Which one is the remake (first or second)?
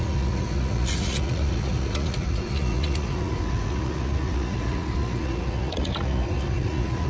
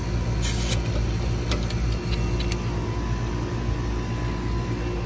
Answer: first